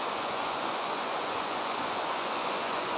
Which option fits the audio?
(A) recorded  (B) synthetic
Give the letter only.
B